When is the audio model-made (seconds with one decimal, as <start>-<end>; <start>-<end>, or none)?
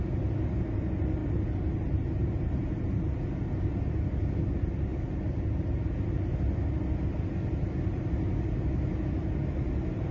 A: none